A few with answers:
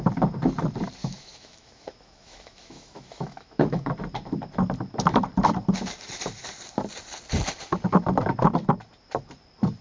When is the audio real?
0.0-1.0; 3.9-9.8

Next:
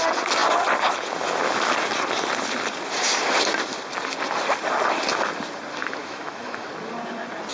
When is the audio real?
0.0-6.0; 6.7-7.5

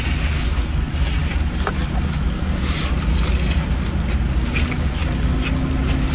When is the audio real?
0.0-6.1

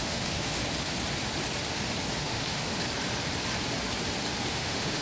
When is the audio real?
0.6-2.2; 2.7-4.5

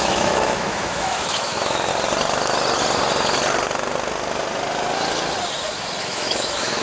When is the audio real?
1.9-6.0

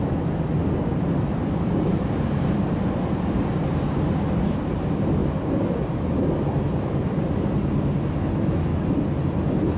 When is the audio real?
0.0-9.8